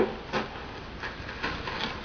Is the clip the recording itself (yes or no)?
yes